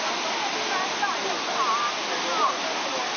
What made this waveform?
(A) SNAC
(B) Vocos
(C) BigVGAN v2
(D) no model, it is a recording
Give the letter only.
D